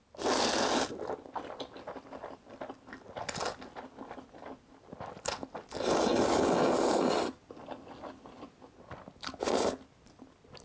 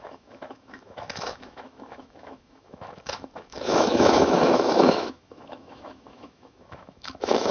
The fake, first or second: second